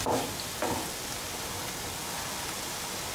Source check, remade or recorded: recorded